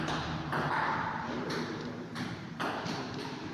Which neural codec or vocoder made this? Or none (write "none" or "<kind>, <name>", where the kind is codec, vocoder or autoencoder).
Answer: vocoder, BigVGAN v2